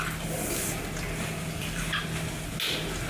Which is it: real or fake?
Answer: real